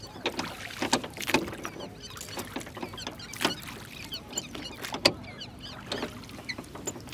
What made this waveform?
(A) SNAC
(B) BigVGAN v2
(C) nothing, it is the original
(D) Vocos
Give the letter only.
C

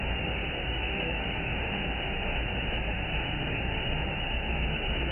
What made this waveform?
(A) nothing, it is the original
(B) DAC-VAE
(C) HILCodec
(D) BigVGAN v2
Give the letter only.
B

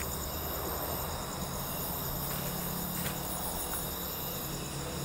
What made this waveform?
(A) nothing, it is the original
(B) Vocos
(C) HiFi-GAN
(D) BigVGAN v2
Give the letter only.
A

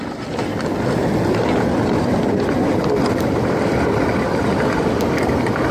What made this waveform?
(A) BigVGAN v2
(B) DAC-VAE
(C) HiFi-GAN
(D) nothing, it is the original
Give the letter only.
D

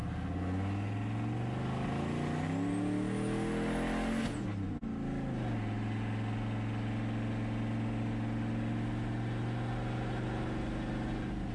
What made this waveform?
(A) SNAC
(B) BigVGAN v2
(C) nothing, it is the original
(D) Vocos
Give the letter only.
C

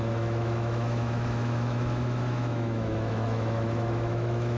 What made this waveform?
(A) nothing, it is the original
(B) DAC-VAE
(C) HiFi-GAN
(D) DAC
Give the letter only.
B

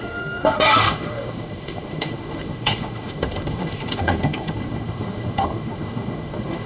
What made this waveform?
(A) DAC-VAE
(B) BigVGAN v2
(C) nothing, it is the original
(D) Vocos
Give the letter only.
A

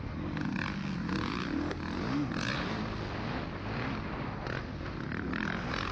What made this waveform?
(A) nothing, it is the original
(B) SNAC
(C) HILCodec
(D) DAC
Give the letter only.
A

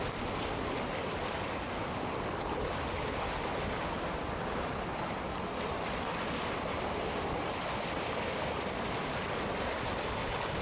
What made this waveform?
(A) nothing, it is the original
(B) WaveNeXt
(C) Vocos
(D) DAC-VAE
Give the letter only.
A